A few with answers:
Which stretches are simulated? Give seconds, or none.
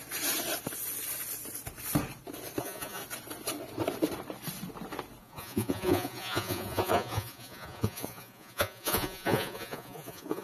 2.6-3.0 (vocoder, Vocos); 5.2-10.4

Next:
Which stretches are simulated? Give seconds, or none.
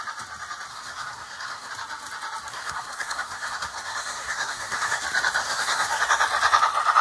0.7-1.7 (codec, SNAC); 2.5-5.0; 5.4-6.0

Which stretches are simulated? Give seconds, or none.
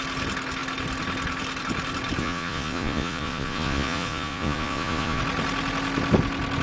2.2-5.2 (vocoder, Vocos)